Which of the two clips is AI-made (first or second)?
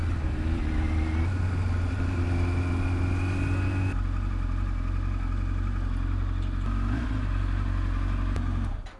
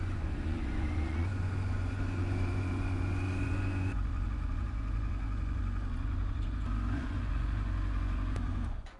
second